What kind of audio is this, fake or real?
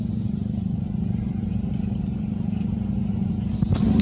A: fake